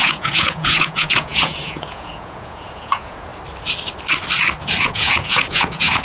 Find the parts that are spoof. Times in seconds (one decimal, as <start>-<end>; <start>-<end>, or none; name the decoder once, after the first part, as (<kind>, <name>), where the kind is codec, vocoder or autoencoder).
0.0-3.3 (vocoder, Vocos); 4.8-6.0